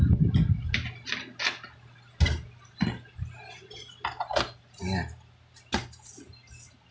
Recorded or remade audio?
recorded